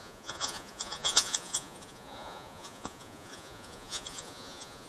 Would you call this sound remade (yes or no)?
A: yes